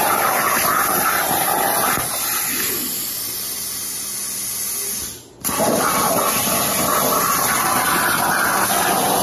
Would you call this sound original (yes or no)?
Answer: yes